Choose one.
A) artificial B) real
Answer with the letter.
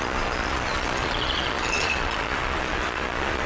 A